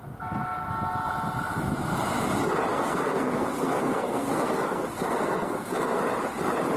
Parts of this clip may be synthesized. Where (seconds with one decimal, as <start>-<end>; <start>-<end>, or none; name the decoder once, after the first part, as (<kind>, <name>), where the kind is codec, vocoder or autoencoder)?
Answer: 2.7-6.0 (codec, SNAC)